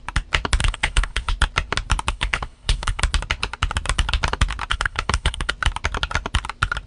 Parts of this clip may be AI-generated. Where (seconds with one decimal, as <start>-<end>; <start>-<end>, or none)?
0.6-1.3; 2.1-3.0; 4.7-5.5